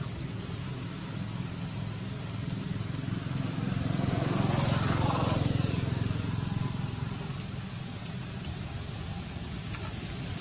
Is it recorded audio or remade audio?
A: recorded